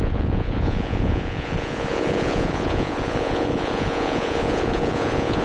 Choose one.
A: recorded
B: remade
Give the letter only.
B